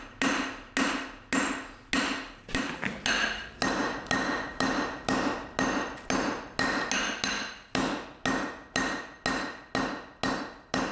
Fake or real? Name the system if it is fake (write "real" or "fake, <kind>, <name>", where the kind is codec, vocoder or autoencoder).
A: real